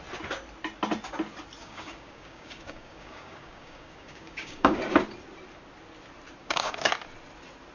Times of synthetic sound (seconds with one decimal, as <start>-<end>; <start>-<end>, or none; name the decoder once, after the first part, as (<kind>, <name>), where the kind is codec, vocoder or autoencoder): 1.6-4.8 (codec, DAC); 6.4-6.9